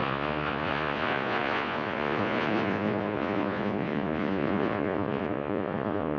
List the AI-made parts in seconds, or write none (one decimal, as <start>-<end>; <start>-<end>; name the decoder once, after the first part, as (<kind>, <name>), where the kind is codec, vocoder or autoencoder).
0.0-6.2 (vocoder, Vocos)